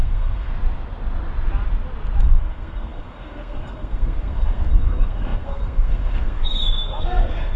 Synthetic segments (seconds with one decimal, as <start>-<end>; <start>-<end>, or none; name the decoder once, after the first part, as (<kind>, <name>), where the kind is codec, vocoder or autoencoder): 0.0-0.5 (codec, SNAC); 2.2-7.6